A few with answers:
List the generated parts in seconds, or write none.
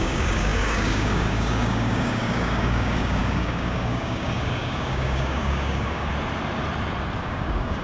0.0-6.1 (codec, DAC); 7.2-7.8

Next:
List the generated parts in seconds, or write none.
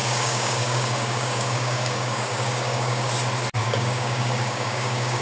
0.0-3.1 (codec, DAC); 3.6-5.2